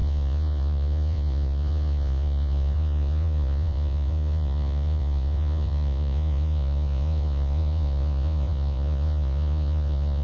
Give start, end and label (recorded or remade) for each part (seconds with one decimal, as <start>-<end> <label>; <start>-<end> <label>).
0.0-10.2 remade